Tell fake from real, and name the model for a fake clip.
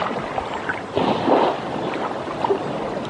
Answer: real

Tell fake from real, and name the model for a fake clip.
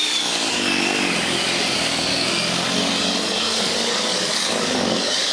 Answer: fake, codec, DAC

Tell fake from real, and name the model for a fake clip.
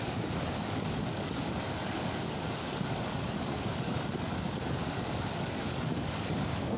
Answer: fake, codec, DAC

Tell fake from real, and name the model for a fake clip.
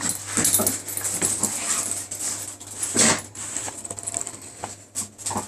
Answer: real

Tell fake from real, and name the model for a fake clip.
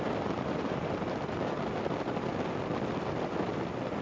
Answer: real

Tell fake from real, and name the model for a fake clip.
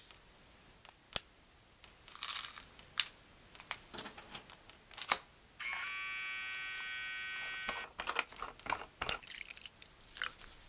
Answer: real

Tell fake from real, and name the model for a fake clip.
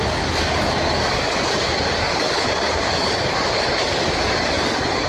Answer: fake, codec, DAC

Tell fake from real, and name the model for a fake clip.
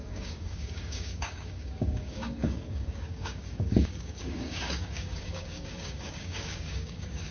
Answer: fake, codec, DAC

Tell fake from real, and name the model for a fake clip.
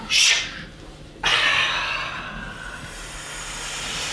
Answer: real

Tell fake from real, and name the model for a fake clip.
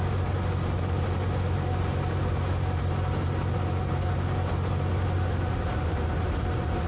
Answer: real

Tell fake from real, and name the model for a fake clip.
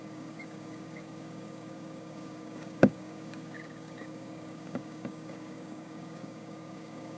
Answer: fake, codec, DAC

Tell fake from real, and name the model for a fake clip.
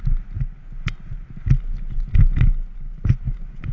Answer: real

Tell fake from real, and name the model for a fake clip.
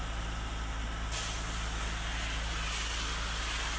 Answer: real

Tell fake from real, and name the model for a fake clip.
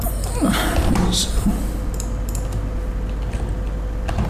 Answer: real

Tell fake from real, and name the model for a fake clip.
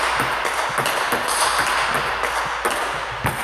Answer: real